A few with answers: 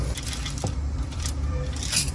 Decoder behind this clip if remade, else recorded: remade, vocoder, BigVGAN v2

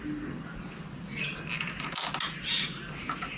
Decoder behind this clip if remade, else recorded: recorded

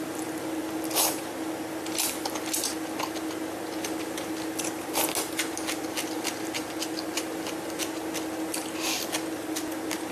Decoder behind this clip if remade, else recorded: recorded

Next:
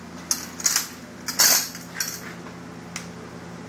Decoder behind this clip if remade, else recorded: recorded